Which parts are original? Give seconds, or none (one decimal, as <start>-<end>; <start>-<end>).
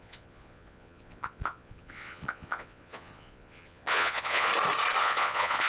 4.5-5.0